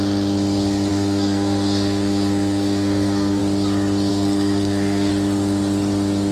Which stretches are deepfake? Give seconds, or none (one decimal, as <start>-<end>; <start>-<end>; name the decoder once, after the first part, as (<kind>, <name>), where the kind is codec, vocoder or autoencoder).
0.9-3.4 (codec, SNAC); 4.1-5.1